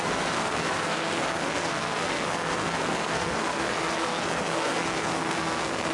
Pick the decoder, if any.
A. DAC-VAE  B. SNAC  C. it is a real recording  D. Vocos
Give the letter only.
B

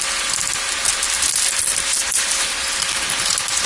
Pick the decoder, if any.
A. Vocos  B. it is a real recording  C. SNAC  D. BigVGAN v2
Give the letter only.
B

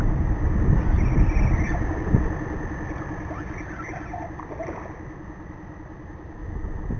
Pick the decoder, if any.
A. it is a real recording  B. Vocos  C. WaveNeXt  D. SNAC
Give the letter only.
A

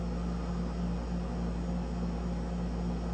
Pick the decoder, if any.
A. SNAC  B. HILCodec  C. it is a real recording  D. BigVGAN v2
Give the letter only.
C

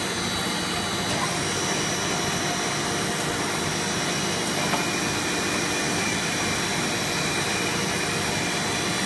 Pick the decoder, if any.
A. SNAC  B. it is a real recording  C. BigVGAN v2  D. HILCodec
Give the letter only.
B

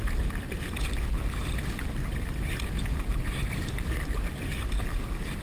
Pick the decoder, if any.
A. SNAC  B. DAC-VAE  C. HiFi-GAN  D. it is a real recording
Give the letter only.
D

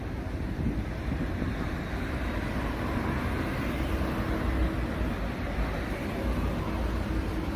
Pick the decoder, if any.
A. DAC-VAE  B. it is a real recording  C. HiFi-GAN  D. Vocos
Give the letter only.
B